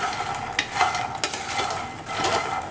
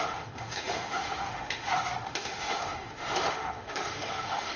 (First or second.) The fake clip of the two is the second